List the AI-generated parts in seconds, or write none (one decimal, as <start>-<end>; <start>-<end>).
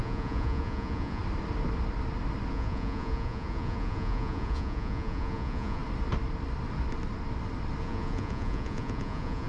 0.0-1.2; 2.5-5.8; 7.8-9.5